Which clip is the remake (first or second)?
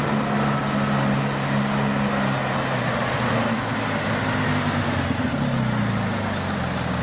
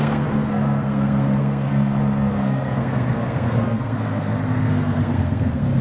second